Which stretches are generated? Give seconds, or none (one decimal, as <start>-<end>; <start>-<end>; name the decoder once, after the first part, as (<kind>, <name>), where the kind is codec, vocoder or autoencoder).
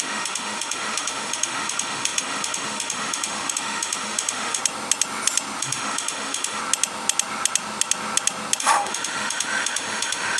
0.0-4.6 (autoencoder, DAC-VAE); 5.6-6.6; 8.6-10.4